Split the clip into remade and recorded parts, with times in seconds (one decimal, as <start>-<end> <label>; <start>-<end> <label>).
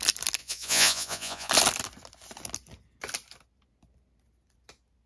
0.0-0.4 recorded; 0.4-1.5 remade; 1.5-5.1 recorded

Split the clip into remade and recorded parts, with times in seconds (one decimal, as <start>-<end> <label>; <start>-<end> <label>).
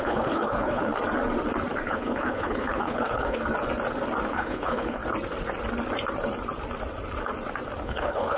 0.0-0.9 remade; 0.9-1.8 recorded; 1.8-3.4 remade; 3.4-4.3 recorded; 4.3-5.0 remade; 5.0-7.8 recorded; 7.8-8.4 remade